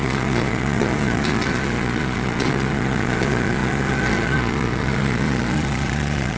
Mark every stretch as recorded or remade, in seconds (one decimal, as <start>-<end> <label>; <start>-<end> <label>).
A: 0.0-6.4 remade